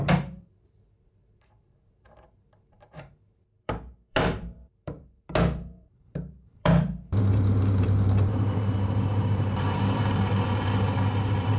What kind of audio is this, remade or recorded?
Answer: remade